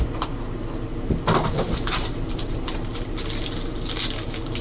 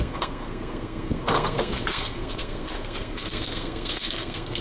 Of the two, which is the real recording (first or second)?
first